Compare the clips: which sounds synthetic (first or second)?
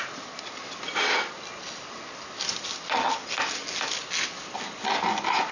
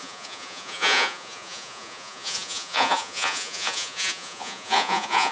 second